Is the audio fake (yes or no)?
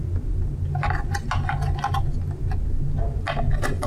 no